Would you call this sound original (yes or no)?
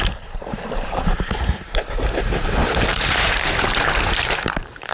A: no